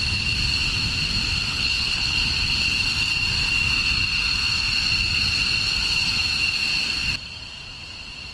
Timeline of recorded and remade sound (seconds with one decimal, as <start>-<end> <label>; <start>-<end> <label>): 0.0-1.5 recorded; 1.5-2.2 remade; 2.2-8.3 recorded